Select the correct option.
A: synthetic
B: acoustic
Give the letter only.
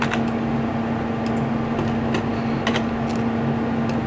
B